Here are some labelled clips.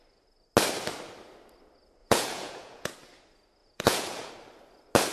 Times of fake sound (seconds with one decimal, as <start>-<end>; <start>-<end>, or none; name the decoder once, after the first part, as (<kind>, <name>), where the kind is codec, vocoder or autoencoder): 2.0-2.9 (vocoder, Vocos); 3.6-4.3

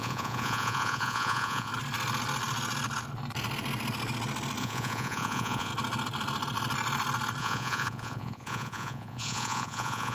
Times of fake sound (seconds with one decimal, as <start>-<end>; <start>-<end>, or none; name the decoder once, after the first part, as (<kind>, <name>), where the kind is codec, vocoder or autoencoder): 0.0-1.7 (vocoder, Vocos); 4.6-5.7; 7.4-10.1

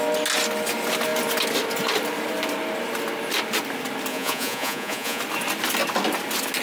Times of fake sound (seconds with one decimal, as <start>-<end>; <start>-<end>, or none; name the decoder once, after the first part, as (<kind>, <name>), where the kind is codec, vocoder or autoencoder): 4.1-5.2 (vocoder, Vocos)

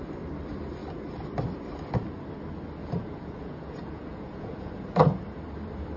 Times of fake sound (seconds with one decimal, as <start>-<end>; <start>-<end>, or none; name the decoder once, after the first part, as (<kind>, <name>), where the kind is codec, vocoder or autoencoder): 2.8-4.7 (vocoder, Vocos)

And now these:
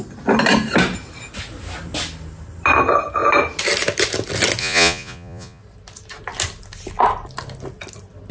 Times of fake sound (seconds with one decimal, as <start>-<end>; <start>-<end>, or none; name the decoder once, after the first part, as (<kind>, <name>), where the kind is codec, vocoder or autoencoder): 4.6-5.6 (vocoder, Vocos)

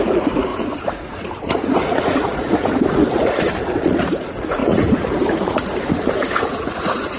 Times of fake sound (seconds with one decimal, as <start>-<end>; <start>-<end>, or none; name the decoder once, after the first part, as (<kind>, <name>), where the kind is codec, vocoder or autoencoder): 0.0-7.2 (vocoder, Vocos)

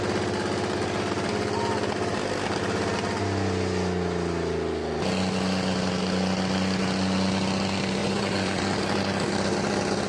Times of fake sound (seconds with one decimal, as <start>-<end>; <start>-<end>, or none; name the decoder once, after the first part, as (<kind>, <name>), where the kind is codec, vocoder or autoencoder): 8.0-8.6 (vocoder, Vocos)

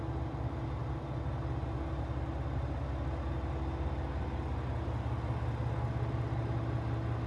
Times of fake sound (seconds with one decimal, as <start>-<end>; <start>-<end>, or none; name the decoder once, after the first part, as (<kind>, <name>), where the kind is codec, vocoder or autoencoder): none